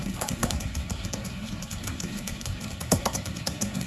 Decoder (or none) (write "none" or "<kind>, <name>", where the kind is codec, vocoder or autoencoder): codec, SNAC